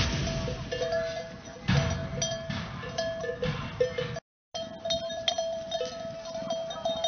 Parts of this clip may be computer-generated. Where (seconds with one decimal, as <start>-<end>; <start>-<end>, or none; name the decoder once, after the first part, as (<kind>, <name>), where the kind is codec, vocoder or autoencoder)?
none